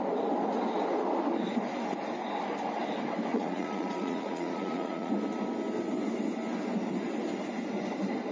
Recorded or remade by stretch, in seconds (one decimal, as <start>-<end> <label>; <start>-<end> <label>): 0.0-3.3 recorded; 3.3-5.1 remade; 5.1-8.3 recorded